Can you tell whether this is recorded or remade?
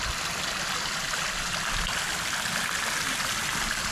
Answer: recorded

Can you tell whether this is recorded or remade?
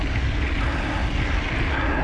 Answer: recorded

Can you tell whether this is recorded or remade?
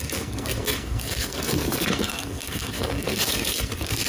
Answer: remade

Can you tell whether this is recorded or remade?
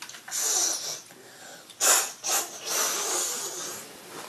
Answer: recorded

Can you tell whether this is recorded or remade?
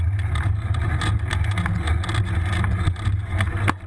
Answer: recorded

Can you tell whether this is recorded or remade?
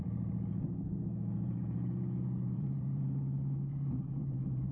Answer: remade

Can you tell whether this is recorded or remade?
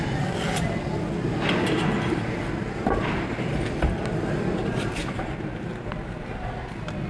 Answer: recorded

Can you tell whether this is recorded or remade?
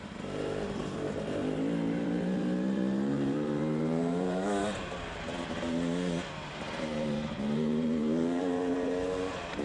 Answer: remade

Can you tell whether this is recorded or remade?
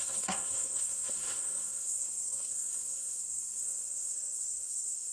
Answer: remade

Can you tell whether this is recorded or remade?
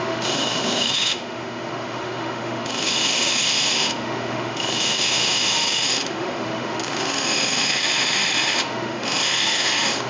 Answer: remade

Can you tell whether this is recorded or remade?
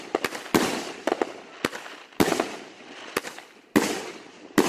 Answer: recorded